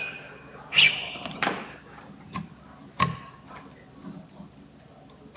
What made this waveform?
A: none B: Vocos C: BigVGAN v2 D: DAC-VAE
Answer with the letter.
A